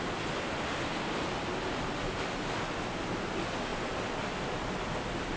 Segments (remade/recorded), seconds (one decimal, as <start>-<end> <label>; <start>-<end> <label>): 0.0-0.9 remade; 0.9-2.8 recorded; 2.8-5.4 remade